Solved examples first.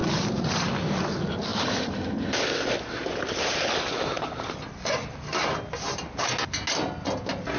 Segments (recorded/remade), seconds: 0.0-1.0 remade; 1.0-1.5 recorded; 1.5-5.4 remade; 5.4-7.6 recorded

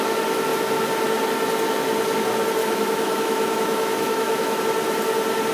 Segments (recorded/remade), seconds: 0.0-2.6 recorded; 2.6-4.6 remade; 4.6-5.5 recorded

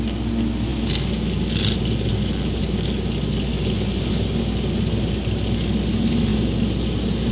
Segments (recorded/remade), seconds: 0.0-7.3 recorded

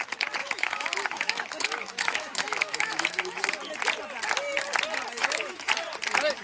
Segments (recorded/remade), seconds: 0.0-0.4 recorded; 0.4-3.5 remade; 3.5-5.2 recorded; 5.2-5.7 remade; 5.7-6.4 recorded

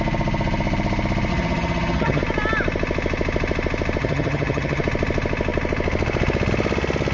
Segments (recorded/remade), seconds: 0.0-1.3 recorded; 1.3-2.2 remade; 2.2-4.0 recorded; 4.0-4.8 remade; 4.8-7.1 recorded